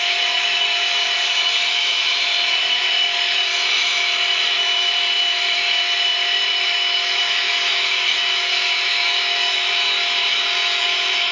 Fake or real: fake